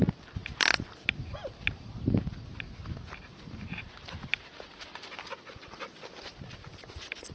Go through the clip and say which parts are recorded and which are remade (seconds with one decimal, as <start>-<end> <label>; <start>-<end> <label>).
0.0-7.3 recorded